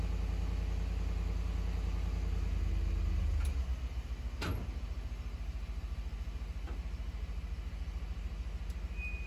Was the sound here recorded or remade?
recorded